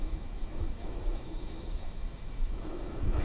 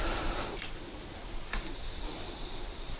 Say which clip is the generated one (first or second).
first